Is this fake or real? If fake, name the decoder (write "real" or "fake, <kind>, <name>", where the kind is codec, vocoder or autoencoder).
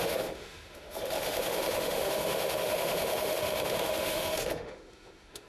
fake, autoencoder, DAC-VAE